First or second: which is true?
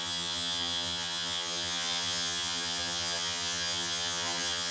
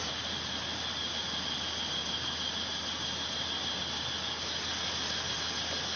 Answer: second